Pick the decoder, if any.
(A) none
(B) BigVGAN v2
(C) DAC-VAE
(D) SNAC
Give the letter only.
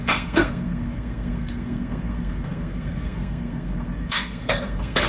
D